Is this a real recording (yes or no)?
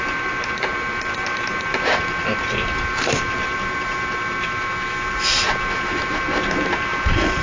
no